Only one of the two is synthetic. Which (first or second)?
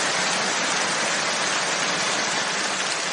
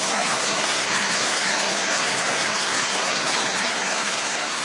second